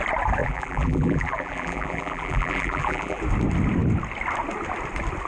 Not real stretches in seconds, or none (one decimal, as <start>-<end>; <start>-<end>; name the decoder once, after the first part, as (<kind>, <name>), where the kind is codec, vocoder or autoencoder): 0.4-3.2 (vocoder, BigVGAN v2)

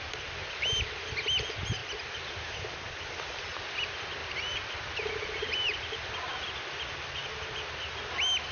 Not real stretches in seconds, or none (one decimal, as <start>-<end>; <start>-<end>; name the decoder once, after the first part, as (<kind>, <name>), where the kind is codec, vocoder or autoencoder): 1.8-3.7 (vocoder, BigVGAN v2); 4.2-6.1

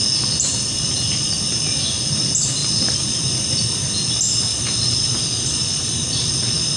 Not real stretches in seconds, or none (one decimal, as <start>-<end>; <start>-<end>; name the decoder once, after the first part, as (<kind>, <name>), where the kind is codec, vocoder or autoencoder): 0.5-1.3 (vocoder, BigVGAN v2); 2.6-3.2; 4.5-6.3